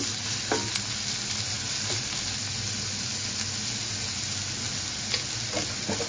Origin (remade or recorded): recorded